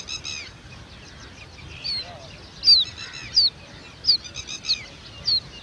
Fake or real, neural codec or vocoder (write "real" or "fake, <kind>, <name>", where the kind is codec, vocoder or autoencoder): real